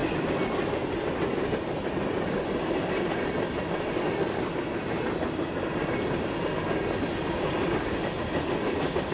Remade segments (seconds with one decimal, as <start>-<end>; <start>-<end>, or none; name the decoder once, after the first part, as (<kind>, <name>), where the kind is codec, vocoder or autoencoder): none